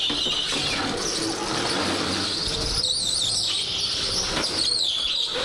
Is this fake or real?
real